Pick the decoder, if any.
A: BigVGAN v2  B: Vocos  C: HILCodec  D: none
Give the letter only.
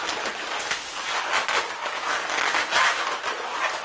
D